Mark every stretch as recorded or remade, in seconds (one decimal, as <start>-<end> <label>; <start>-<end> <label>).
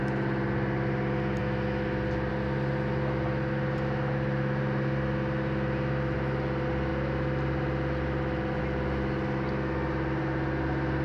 0.0-11.0 recorded